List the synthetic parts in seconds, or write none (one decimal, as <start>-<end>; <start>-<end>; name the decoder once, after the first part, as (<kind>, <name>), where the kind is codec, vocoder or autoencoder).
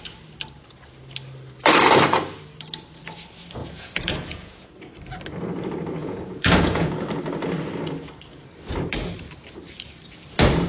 3.6-4.7 (vocoder, Vocos); 6.0-6.9